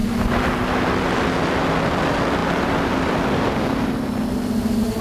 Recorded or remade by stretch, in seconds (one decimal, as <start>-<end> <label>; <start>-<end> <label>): 0.0-5.0 recorded